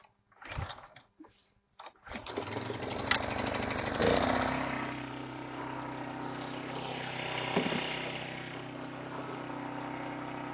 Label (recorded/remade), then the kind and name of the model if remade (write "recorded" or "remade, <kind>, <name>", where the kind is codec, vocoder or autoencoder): recorded